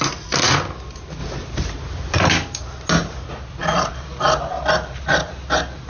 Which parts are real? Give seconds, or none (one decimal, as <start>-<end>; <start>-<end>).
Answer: 0.0-5.9